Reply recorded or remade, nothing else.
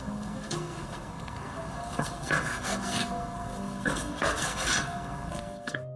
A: remade